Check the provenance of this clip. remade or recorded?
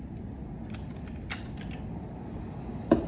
recorded